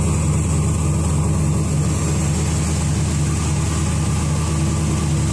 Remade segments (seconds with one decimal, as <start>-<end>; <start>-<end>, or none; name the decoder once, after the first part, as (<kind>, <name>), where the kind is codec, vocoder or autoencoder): none